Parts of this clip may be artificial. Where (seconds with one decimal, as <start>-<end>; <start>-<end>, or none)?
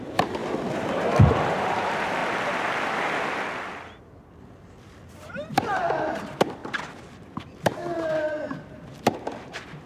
0.0-0.4; 1.2-2.2; 4.4-6.6; 7.4-9.9